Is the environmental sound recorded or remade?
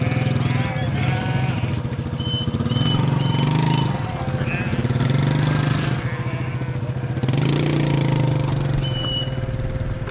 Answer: recorded